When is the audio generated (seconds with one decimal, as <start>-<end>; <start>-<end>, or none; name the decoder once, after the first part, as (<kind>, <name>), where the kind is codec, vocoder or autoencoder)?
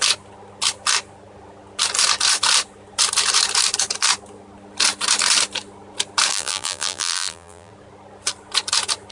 6.3-7.7 (vocoder, BigVGAN v2)